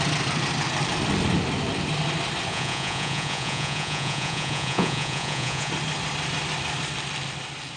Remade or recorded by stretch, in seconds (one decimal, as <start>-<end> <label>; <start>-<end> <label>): 0.0-2.5 recorded; 2.5-5.7 remade; 5.7-7.8 recorded